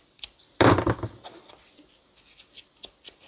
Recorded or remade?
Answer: recorded